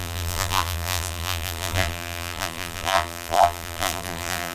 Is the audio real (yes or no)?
no